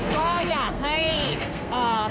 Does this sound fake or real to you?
fake